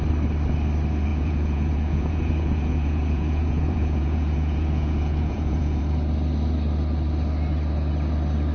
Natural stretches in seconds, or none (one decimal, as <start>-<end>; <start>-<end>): 0.0-1.1; 5.8-8.5